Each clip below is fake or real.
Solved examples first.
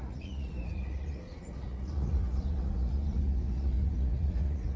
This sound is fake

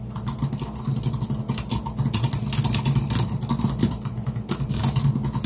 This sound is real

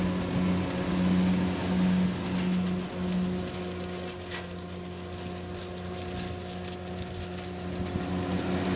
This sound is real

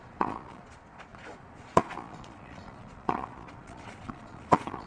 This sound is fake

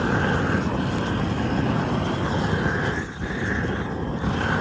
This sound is real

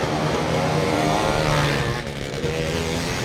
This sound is real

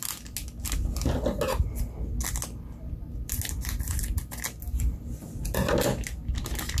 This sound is real